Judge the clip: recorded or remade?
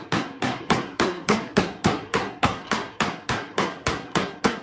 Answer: remade